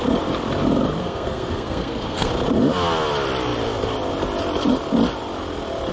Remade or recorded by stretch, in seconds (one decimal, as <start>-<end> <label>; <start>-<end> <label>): 0.0-1.0 recorded; 1.0-2.3 remade; 2.3-5.9 recorded